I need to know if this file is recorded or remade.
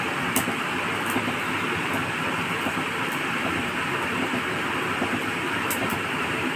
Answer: remade